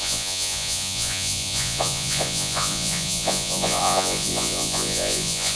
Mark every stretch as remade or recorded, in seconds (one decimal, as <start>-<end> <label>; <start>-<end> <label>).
0.0-5.5 remade